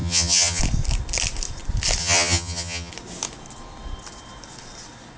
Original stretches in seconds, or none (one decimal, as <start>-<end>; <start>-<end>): 0.6-2.0; 2.9-5.2